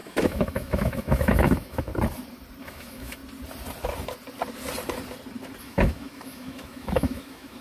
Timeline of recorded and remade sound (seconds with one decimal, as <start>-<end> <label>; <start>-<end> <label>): 0.0-1.9 remade; 1.9-2.6 recorded; 2.6-3.2 remade; 3.2-5.6 recorded; 5.6-7.6 remade